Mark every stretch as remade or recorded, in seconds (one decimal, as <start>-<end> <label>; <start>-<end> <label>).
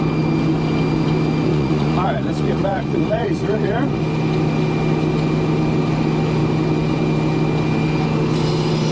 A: 0.0-1.5 recorded; 1.5-4.0 remade; 4.0-8.9 recorded